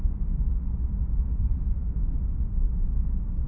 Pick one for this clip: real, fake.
real